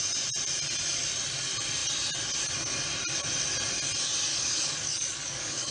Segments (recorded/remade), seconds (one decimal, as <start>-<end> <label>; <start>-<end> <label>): 0.0-4.3 recorded; 4.3-5.7 remade